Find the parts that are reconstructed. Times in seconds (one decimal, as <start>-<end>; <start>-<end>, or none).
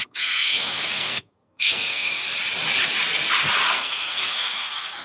0.0-2.2; 3.7-5.0